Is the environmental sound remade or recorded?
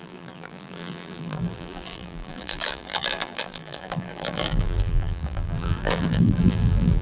remade